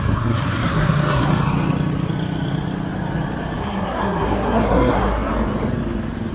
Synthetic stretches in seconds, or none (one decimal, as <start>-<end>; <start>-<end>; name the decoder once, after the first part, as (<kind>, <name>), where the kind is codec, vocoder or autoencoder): 0.0-1.3 (codec, SNAC); 3.6-5.3